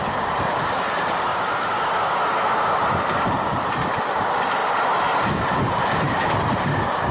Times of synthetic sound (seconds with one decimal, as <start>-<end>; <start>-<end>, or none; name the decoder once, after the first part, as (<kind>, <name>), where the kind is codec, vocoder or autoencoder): 0.0-1.3 (vocoder, BigVGAN v2); 4.0-4.6; 5.2-7.1